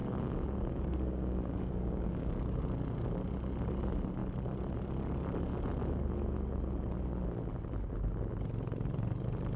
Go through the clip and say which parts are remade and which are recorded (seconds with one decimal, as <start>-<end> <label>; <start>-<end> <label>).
0.0-2.6 remade; 2.6-9.6 recorded